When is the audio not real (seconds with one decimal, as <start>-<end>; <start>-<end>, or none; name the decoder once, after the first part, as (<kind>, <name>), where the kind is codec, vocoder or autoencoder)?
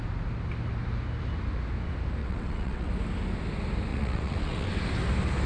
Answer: 2.2-2.9 (vocoder, WaveNeXt); 3.9-4.7